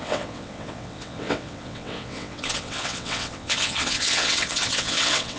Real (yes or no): no